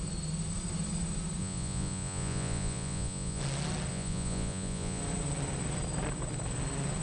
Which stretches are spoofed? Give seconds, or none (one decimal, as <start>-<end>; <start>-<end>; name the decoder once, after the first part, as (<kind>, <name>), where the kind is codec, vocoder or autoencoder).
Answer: 1.4-3.4 (vocoder, Vocos); 3.9-5.0